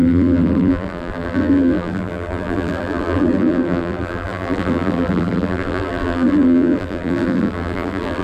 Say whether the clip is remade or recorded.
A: remade